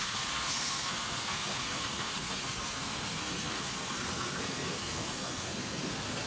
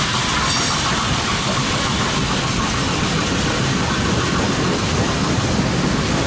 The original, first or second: second